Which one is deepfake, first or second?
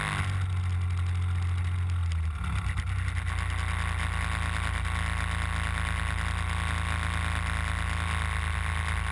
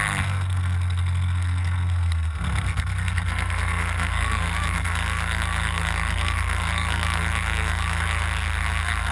second